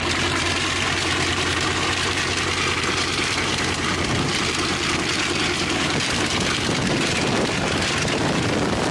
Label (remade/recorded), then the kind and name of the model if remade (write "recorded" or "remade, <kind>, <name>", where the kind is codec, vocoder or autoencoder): remade, vocoder, BigVGAN v2